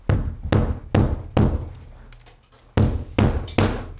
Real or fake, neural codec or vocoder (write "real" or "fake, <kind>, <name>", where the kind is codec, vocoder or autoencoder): real